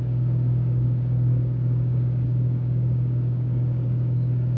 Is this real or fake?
fake